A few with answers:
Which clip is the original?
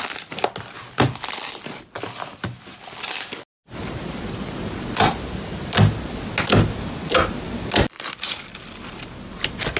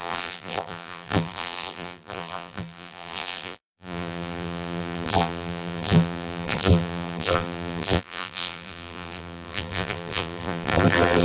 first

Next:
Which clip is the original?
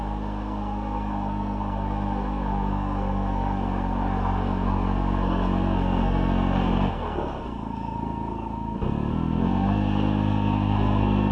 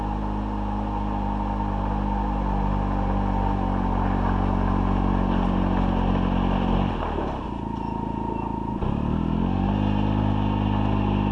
second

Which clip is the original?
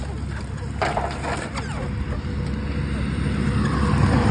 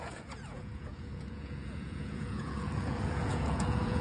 first